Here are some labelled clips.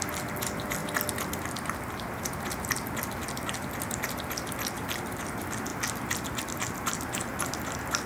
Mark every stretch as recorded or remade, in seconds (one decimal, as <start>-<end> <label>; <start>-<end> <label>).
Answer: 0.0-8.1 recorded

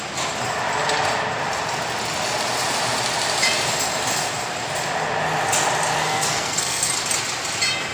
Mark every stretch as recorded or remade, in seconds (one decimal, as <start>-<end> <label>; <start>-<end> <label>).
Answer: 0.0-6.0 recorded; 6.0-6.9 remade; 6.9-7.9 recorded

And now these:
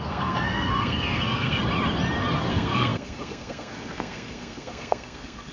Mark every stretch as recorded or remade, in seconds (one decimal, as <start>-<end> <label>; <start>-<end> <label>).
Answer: 0.0-1.6 remade; 1.6-2.5 recorded; 2.5-5.5 remade

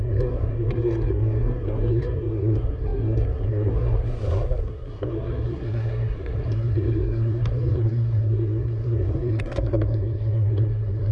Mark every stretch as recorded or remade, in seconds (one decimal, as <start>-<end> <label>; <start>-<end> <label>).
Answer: 0.0-11.1 remade

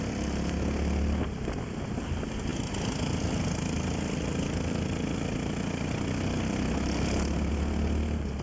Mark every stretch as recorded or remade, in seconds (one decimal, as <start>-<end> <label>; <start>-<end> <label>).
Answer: 0.0-8.4 recorded